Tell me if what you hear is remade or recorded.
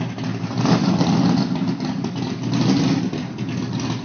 recorded